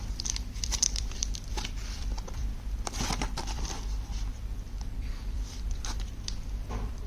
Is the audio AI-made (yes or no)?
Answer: yes